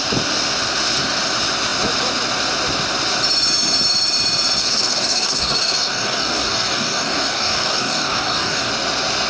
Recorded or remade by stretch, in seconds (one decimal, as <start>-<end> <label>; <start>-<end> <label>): 0.0-4.6 recorded; 4.6-8.7 remade; 8.7-9.3 recorded